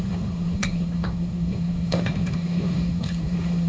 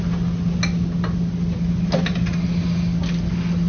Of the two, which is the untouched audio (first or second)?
second